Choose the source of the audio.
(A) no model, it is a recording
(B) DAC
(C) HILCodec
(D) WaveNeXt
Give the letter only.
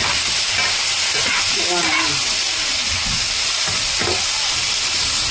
A